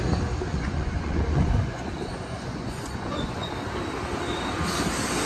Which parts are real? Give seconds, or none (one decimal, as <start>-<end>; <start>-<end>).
0.0-0.5; 3.5-5.3